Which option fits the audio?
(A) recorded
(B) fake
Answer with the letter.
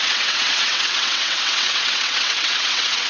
B